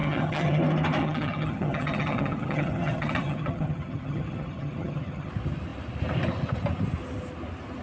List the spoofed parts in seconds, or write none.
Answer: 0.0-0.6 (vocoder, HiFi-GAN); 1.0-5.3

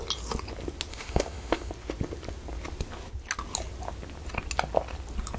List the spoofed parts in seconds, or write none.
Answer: 0.9-1.7 (autoencoder, DAC-VAE)

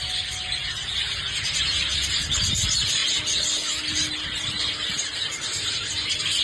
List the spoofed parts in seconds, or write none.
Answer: none